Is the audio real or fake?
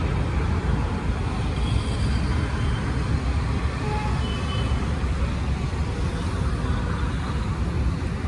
real